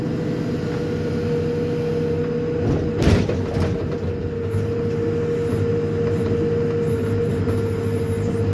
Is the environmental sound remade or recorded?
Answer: recorded